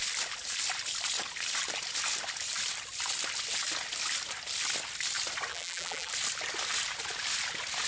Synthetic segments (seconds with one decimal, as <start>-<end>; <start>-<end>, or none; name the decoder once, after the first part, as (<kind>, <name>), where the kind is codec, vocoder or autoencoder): 5.5-6.1 (vocoder, BigVGAN v2)